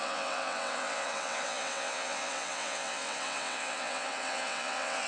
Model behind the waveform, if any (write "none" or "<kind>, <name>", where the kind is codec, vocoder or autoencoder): vocoder, WaveNeXt